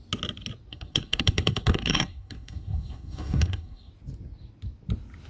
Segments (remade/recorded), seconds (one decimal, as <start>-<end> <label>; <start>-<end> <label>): 0.0-0.7 recorded; 0.7-3.9 remade; 3.9-5.3 recorded